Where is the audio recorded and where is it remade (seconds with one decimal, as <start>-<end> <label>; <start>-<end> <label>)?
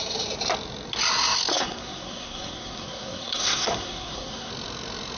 0.0-1.5 recorded; 1.5-4.5 remade; 4.5-5.2 recorded